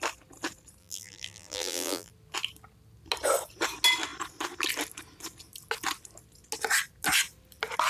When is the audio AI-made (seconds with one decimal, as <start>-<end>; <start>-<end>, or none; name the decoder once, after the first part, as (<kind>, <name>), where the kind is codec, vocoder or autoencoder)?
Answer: 0.8-2.1 (vocoder, BigVGAN v2)